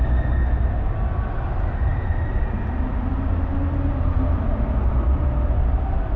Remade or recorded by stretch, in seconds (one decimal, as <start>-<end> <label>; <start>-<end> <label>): 0.0-6.2 recorded